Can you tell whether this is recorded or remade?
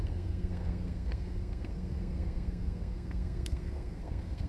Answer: remade